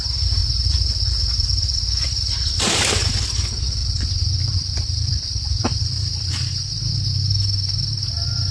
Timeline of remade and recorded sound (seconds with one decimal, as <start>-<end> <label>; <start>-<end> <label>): 0.0-0.4 recorded; 0.4-3.1 remade; 3.1-3.8 recorded; 3.8-6.3 remade; 6.3-8.5 recorded